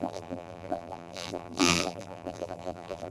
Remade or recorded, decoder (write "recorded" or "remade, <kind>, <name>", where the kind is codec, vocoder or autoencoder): remade, vocoder, BigVGAN v2